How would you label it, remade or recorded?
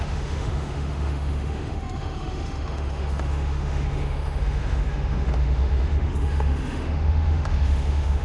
remade